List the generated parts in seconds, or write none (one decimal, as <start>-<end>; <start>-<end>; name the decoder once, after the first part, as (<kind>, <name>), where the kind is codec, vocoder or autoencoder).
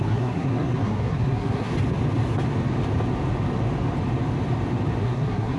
0.0-1.7 (codec, SNAC); 5.0-5.6